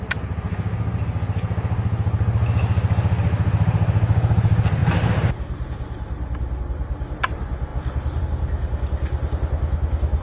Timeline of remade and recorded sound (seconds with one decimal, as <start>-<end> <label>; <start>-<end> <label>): 0.0-10.2 recorded